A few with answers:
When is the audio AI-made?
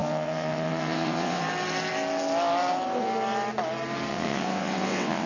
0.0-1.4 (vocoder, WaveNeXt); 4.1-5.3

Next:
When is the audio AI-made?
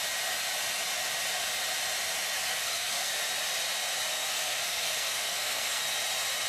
2.4-3.1 (codec, SNAC); 4.1-5.8